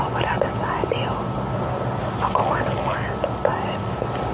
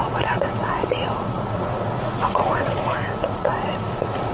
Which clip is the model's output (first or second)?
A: second